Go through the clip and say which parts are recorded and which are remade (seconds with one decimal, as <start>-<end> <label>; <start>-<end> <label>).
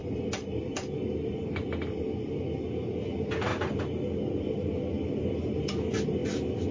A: 0.0-6.7 recorded